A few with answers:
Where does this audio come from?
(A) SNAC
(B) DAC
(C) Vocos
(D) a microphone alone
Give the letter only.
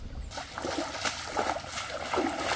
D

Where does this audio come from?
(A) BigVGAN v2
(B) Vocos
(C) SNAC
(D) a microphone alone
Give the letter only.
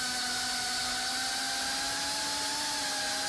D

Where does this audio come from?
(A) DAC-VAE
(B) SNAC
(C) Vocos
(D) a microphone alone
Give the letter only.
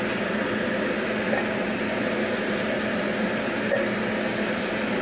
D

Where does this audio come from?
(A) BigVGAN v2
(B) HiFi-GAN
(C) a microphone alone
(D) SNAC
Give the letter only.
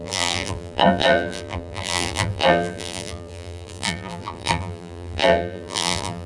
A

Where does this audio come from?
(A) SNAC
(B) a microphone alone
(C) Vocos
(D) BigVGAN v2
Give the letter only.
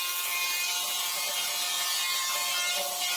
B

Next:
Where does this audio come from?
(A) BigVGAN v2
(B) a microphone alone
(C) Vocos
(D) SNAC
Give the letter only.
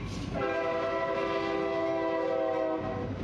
B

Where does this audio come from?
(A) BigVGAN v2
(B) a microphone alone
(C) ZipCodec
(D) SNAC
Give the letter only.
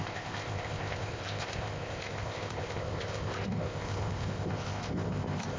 C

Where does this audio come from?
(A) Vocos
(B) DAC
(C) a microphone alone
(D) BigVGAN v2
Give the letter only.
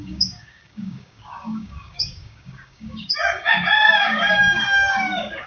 B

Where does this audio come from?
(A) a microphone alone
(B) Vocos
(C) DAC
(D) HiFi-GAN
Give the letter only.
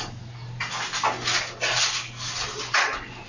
A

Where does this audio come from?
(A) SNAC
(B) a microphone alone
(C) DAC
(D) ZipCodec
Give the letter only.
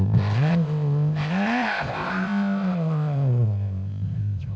D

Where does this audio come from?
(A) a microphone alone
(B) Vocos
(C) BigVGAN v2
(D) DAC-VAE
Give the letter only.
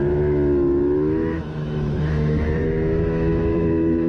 D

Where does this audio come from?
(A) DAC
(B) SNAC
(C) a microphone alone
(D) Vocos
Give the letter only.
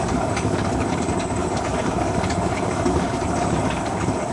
A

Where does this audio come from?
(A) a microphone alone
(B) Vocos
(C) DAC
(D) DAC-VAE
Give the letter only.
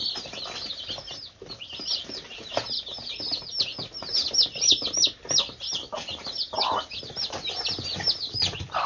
A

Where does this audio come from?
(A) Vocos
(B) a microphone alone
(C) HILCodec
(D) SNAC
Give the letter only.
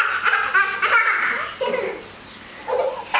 B